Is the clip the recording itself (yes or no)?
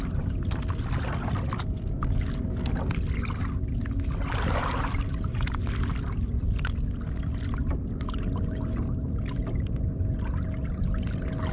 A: yes